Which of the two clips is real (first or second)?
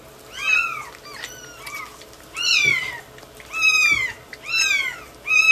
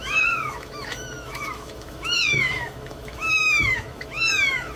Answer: first